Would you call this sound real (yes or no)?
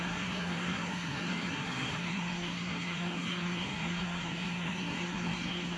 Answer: no